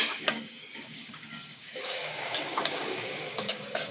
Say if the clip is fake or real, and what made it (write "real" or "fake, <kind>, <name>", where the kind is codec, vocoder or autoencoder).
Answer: fake, codec, DAC